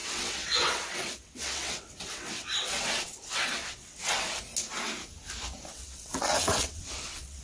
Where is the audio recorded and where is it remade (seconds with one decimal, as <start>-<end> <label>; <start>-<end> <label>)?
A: 0.0-4.4 remade; 4.4-5.7 recorded; 5.7-7.4 remade